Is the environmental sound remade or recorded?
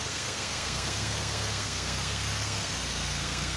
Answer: remade